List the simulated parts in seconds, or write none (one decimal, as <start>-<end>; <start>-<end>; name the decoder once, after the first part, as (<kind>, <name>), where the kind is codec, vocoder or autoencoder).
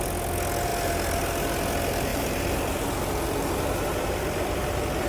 none